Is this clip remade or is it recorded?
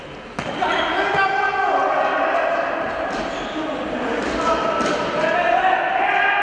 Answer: recorded